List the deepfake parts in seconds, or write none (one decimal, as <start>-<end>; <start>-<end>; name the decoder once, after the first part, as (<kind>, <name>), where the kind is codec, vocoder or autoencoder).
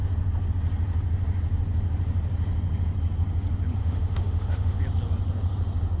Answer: 3.8-4.8 (autoencoder, DAC-VAE)